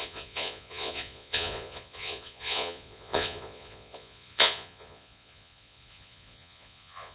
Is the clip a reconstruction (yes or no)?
yes